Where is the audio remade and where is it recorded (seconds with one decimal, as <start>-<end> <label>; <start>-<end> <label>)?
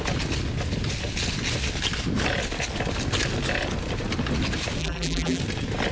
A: 0.0-4.8 recorded; 4.8-5.4 remade; 5.4-5.9 recorded